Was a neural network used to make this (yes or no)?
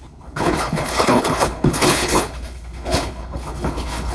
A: yes